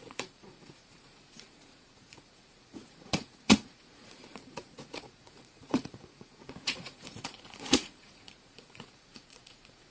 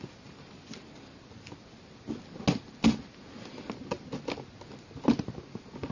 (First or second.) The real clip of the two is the second